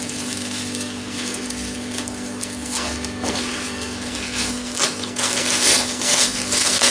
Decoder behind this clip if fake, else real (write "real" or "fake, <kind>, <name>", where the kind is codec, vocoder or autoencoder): fake, codec, SNAC